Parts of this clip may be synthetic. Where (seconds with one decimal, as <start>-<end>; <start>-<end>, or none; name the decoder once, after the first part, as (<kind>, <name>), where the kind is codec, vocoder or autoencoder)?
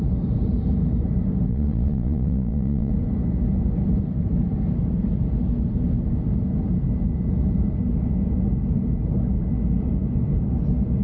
1.5-2.9 (vocoder, Vocos)